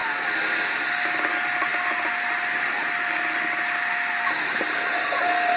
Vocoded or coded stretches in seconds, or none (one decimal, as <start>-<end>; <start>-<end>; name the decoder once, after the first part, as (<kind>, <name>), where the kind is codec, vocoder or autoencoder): none